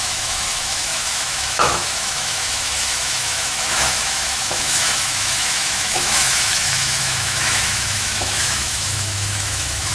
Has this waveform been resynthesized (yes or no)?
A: yes